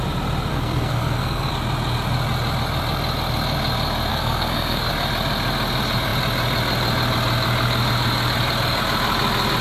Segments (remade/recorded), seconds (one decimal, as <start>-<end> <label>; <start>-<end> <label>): 0.0-0.5 recorded; 0.5-1.5 remade; 1.5-4.1 recorded; 4.1-4.9 remade; 4.9-9.6 recorded

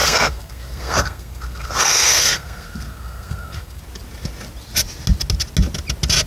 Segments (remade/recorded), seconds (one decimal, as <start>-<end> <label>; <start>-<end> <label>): 0.0-3.8 remade; 3.8-6.3 recorded

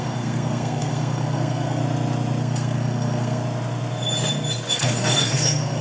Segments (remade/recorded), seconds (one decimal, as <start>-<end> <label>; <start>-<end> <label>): 0.0-1.8 remade; 1.8-2.4 recorded; 2.4-3.4 remade; 3.4-4.7 recorded; 4.7-5.8 remade

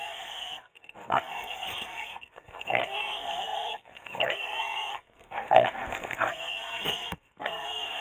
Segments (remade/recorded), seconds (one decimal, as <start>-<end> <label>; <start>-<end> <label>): 0.0-8.0 remade

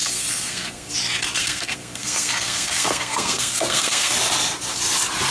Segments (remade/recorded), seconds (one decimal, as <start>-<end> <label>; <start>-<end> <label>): 0.0-0.9 remade; 0.9-1.4 recorded; 1.4-4.1 remade; 4.1-5.3 recorded

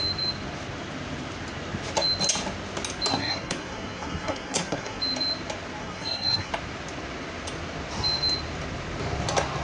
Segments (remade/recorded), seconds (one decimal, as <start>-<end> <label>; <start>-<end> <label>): 0.0-3.1 recorded; 3.1-5.0 remade; 5.0-5.8 recorded; 5.8-6.5 remade; 6.5-9.6 recorded

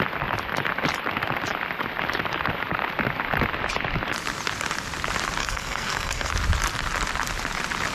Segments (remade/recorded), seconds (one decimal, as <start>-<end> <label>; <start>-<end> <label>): 0.0-5.4 recorded; 5.4-6.3 remade; 6.3-7.9 recorded